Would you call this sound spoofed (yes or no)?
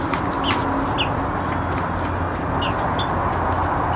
no